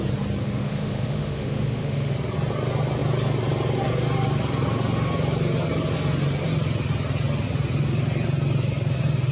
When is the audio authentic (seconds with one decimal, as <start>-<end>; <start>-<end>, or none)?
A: 0.0-0.4; 2.1-9.3